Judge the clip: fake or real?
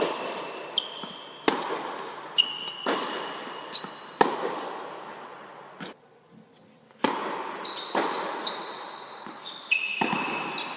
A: real